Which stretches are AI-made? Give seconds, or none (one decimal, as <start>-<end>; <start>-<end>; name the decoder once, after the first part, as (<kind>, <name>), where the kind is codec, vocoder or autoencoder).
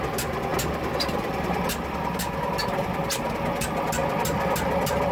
0.5-2.3 (vocoder, BigVGAN v2)